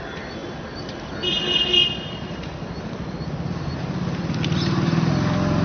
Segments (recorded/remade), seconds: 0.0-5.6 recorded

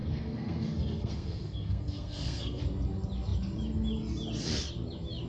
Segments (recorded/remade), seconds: 0.0-2.6 remade; 2.6-5.3 recorded

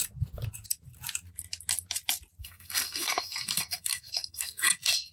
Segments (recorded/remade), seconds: 0.0-2.4 recorded; 2.4-5.1 remade

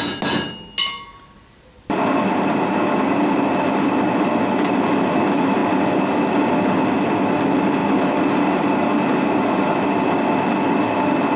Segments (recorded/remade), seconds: 0.0-11.4 recorded